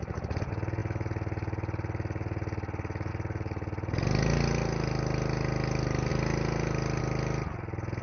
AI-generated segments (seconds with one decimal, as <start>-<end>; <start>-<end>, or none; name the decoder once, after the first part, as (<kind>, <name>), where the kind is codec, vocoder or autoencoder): none